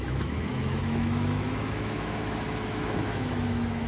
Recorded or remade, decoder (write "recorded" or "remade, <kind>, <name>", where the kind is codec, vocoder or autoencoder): remade, autoencoder, DAC-VAE